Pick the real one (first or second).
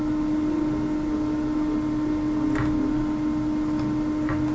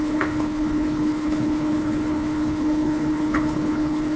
first